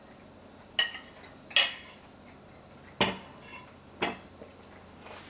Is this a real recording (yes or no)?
yes